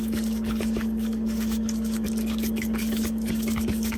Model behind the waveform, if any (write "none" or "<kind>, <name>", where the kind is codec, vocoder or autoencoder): codec, DAC